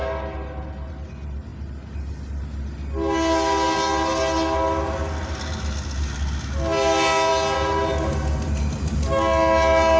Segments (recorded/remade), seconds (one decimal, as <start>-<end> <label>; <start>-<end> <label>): 0.0-10.0 recorded